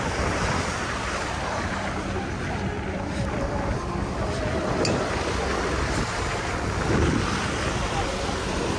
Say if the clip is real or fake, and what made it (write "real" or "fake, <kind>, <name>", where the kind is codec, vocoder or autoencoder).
real